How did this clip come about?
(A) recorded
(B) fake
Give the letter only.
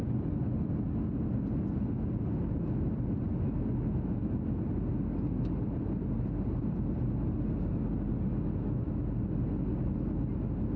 A